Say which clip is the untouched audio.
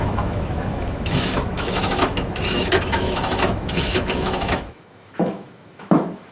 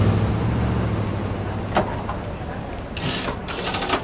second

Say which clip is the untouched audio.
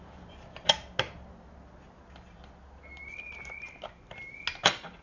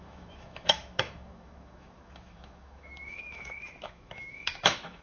first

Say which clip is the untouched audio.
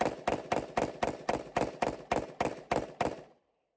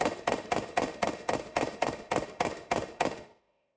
first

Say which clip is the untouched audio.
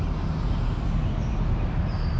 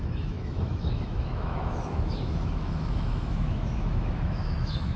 first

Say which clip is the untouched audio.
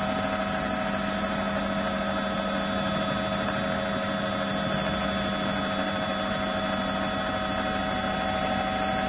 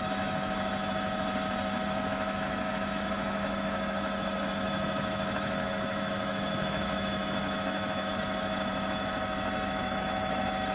first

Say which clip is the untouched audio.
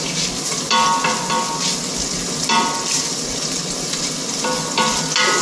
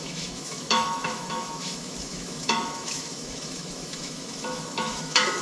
first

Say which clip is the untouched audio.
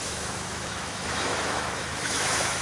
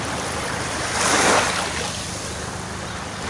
second